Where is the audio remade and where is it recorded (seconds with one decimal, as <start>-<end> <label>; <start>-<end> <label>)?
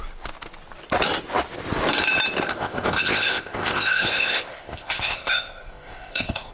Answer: 0.0-2.5 recorded; 2.5-6.5 remade